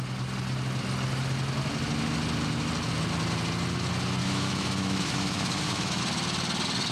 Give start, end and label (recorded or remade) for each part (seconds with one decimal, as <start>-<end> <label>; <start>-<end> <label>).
0.0-4.2 recorded; 4.2-6.0 remade; 6.0-6.9 recorded